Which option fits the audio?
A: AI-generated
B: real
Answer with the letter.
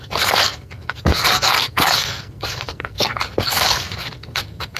A